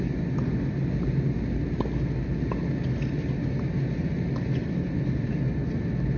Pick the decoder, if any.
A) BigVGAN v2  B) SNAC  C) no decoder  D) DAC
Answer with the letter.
C